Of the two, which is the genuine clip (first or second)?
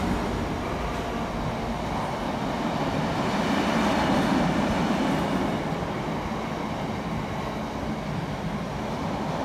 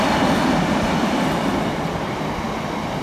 first